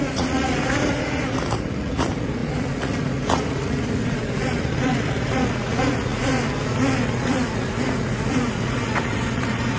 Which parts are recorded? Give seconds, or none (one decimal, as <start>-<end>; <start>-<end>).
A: 6.3-7.0